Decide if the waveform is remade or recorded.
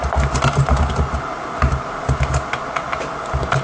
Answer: recorded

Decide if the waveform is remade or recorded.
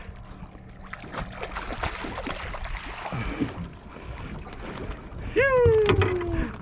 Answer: recorded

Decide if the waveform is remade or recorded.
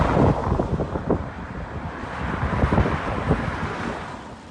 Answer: recorded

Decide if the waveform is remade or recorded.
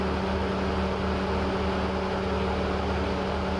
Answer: recorded